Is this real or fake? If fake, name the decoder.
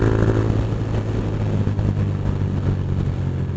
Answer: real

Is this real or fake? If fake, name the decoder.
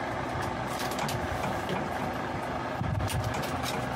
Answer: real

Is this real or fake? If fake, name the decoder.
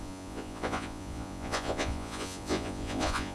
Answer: fake, vocoder, Vocos